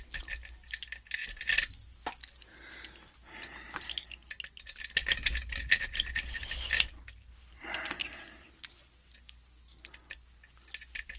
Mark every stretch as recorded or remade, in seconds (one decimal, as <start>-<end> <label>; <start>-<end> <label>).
0.0-11.2 recorded